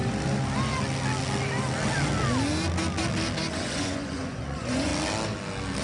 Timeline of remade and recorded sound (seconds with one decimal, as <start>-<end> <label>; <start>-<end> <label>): 0.0-3.5 recorded; 3.5-4.9 remade; 4.9-5.8 recorded